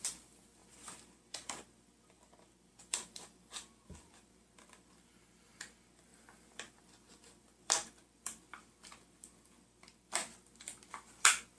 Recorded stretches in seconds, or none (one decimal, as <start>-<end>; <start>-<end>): none